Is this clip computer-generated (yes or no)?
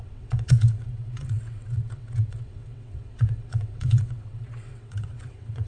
yes